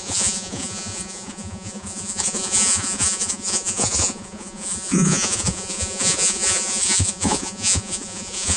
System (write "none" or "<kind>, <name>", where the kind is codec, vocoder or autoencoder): vocoder, Vocos